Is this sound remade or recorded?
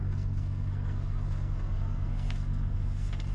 remade